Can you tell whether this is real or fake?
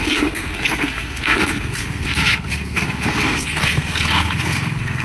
fake